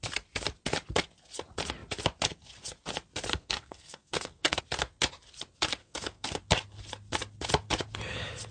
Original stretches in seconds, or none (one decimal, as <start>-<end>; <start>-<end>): 0.0-3.3; 4.6-5.8; 6.4-8.5